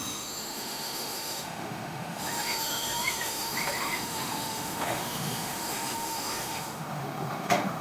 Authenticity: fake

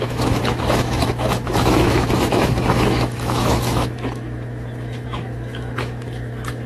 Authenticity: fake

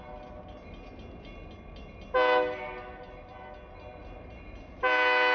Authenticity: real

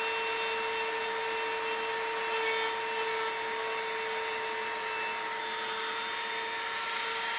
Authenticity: real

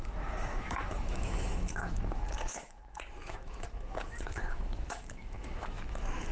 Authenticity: fake